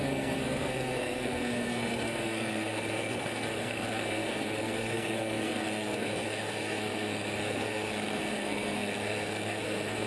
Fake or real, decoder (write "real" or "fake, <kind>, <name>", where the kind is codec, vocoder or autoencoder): fake, codec, SNAC